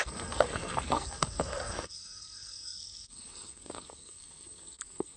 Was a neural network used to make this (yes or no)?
yes